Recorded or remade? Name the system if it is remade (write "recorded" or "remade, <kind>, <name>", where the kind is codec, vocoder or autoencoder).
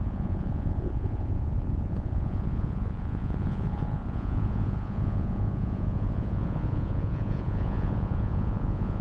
remade, vocoder, Vocos